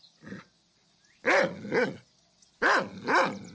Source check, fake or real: real